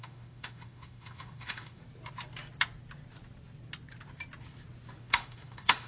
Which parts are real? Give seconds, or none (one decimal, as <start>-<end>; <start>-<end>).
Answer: 1.8-5.0